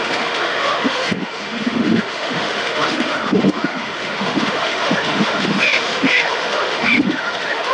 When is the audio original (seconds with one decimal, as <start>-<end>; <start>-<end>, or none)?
none